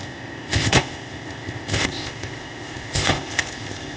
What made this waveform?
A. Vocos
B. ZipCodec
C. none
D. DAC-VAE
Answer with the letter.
B